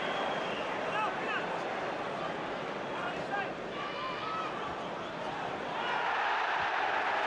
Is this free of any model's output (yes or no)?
yes